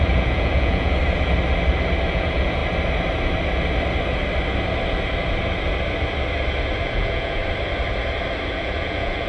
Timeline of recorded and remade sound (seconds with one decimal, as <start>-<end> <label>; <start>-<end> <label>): 0.0-1.0 remade; 1.0-2.1 recorded; 2.1-2.6 remade; 2.6-6.8 recorded; 6.8-7.4 remade; 7.4-8.5 recorded; 8.5-9.3 remade